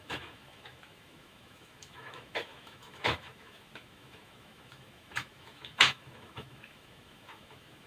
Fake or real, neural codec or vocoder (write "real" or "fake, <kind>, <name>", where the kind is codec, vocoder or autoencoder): fake, autoencoder, DAC-VAE